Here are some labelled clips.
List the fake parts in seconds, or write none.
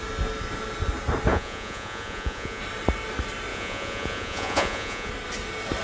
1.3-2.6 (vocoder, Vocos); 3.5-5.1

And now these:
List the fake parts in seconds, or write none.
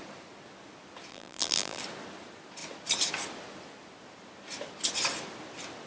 1.1-1.8 (vocoder, BigVGAN v2)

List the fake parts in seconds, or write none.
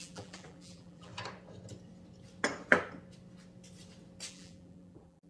0.0-1.1 (vocoder, BigVGAN v2); 4.3-5.3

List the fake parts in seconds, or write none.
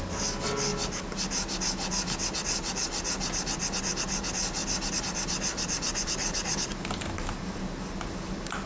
none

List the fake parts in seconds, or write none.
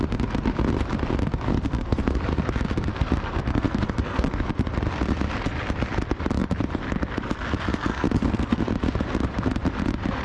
1.5-2.2 (codec, SNAC); 2.9-4.7; 7.7-8.7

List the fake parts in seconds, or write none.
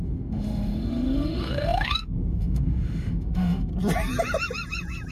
0.0-3.7 (autoencoder, DAC-VAE)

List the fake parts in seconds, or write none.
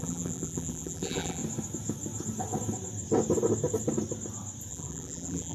0.0-1.4 (vocoder, BigVGAN v2); 4.7-5.5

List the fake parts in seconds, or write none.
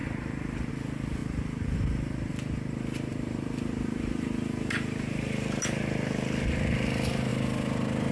0.0-0.7 (vocoder, BigVGAN v2); 1.2-2.3; 3.1-5.8; 7.3-8.1